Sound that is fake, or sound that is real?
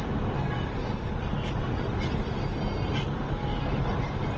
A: real